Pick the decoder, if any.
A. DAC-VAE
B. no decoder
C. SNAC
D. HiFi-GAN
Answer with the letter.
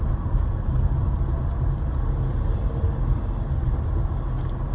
B